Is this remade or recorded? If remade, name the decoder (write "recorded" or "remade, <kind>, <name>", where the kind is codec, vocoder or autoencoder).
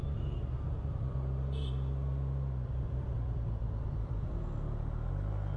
recorded